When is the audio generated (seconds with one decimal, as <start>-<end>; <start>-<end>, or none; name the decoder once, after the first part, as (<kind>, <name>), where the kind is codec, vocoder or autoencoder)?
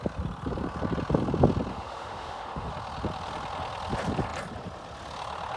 1.7-2.7 (autoencoder, DAC-VAE)